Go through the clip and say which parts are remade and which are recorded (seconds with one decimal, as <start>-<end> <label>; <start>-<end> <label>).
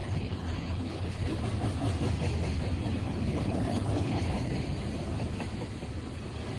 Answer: 0.0-1.4 remade; 1.4-3.0 recorded; 3.0-4.5 remade; 4.5-6.6 recorded